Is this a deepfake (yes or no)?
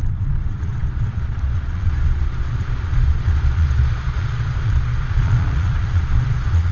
yes